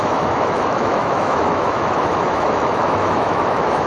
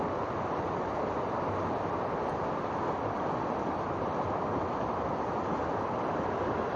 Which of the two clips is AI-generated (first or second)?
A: first